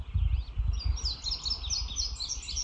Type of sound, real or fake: real